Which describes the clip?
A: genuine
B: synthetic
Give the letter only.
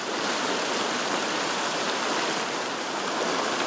A